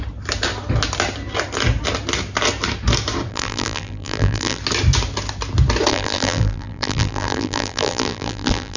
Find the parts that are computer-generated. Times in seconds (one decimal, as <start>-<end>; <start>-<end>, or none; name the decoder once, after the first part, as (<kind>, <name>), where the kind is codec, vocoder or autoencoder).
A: 3.3-4.6 (vocoder, BigVGAN v2); 5.9-8.8

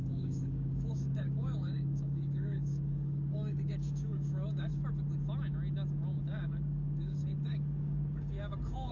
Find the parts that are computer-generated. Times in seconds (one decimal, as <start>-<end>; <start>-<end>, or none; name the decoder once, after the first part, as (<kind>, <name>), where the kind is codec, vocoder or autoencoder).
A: 0.0-4.7 (codec, DAC); 6.2-8.9